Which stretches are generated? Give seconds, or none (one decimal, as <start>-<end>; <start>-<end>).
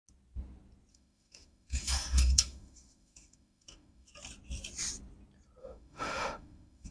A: 0.9-4.1; 5.6-6.9